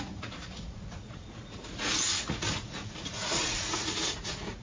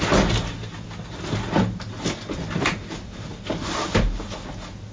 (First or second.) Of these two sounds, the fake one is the first